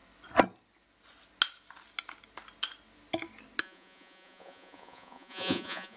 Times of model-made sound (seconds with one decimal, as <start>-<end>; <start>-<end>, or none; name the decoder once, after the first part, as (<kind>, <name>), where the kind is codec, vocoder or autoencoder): 3.6-6.0 (vocoder, Vocos)